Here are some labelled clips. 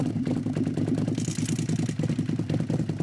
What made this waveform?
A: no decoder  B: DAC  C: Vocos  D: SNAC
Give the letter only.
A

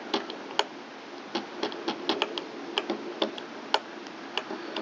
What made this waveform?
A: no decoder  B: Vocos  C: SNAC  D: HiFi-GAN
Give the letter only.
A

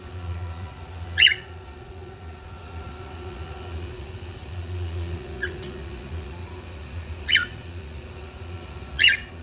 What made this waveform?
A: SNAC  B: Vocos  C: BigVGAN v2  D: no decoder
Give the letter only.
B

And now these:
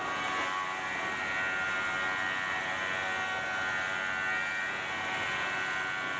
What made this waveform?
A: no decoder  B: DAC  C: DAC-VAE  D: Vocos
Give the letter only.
A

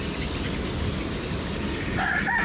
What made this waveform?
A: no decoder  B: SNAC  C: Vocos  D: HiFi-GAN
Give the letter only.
A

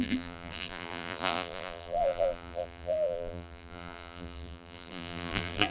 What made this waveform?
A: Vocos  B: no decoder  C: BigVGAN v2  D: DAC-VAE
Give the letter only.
C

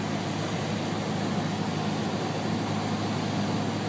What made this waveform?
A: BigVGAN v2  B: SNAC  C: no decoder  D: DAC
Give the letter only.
C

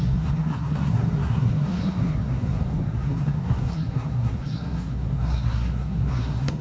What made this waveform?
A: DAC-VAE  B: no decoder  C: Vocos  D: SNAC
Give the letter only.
D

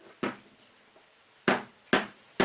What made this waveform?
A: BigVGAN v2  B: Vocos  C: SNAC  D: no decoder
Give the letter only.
D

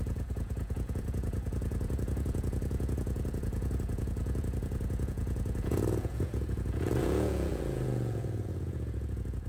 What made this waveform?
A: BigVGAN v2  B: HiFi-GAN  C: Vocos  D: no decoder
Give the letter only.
C